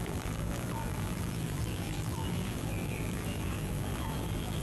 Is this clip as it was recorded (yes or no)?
no